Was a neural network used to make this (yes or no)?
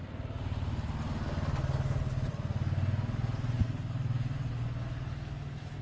no